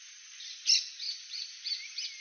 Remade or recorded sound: recorded